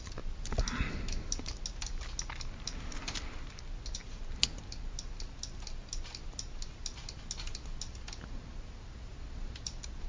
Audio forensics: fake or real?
real